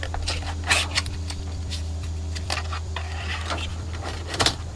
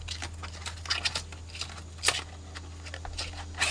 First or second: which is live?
second